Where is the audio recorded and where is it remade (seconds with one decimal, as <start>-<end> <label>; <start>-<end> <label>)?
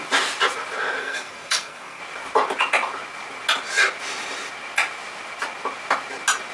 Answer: 0.0-1.0 recorded; 1.0-2.0 remade; 2.0-6.5 recorded